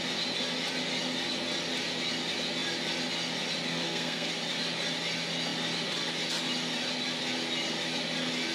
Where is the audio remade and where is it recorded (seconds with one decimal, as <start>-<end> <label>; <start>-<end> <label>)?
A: 0.0-3.7 recorded; 3.7-4.3 remade; 4.3-8.5 recorded